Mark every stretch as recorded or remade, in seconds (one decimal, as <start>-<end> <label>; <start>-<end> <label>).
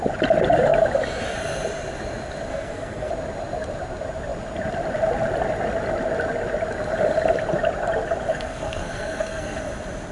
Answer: 0.0-2.5 recorded; 2.5-3.1 remade; 3.1-8.3 recorded; 8.3-9.6 remade; 9.6-10.1 recorded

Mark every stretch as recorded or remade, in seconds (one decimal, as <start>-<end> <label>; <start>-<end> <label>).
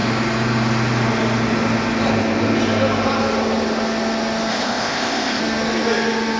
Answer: 0.0-4.5 recorded; 4.5-5.4 remade; 5.4-6.4 recorded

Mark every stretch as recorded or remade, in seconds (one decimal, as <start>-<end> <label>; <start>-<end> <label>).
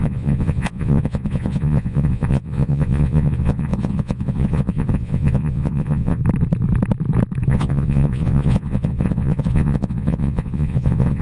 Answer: 0.0-6.2 remade; 6.2-7.5 recorded; 7.5-11.2 remade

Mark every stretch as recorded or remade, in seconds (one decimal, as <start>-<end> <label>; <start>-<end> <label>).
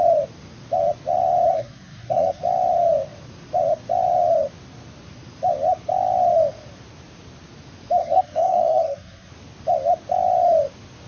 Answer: 0.0-1.5 recorded; 1.5-2.4 remade; 2.4-8.0 recorded; 8.0-9.3 remade; 9.3-11.1 recorded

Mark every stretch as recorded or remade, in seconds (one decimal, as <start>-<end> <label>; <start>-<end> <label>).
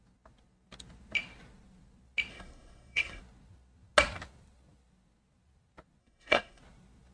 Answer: 0.0-2.3 recorded; 2.3-3.2 remade; 3.2-6.0 recorded; 6.0-6.6 remade; 6.6-7.1 recorded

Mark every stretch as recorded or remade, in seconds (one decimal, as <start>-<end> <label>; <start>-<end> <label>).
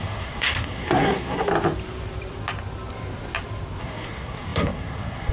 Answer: 0.0-1.5 remade; 1.5-3.8 recorded; 3.8-5.3 remade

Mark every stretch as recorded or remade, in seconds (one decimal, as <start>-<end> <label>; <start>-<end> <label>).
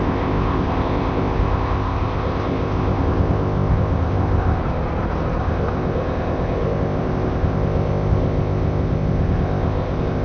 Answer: 0.0-4.6 remade; 4.6-5.4 recorded; 5.4-10.2 remade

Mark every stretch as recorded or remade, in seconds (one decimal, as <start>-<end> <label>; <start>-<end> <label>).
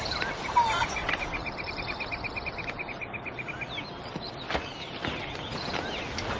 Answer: 0.0-1.0 recorded; 1.0-1.7 remade; 1.7-6.4 recorded